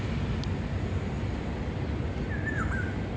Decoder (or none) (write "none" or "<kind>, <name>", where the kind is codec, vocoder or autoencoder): none